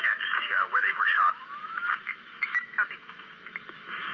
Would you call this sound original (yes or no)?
no